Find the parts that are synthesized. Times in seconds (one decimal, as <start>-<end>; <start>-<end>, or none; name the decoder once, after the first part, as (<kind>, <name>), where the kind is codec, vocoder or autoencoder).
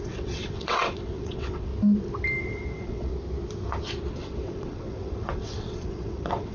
0.0-1.7 (vocoder, WaveNeXt); 2.4-3.1; 4.1-6.5